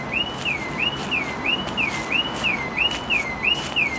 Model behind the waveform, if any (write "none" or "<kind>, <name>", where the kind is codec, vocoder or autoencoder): none